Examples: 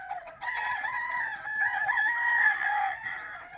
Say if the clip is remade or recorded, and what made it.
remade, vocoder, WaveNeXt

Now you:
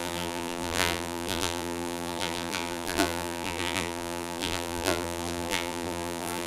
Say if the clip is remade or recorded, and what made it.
remade, vocoder, BigVGAN v2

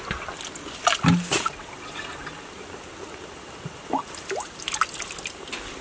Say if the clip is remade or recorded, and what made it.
recorded